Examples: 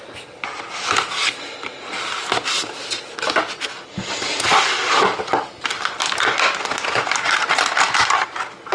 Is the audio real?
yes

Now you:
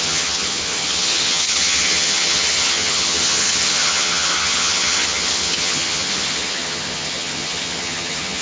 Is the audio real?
no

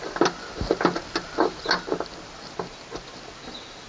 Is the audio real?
yes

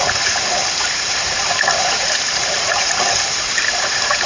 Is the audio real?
no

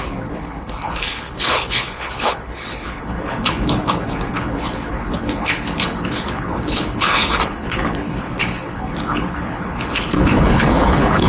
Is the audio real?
no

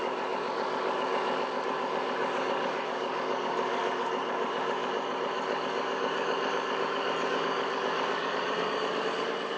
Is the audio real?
no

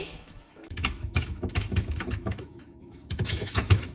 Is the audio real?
no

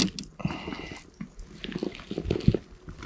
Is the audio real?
yes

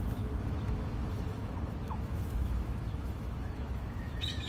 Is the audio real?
no